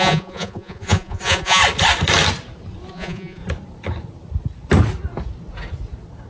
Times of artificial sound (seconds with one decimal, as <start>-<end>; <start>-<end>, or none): 0.0-1.6; 2.9-3.4